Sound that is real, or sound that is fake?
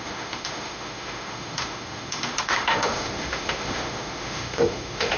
fake